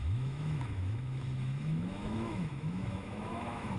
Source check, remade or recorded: remade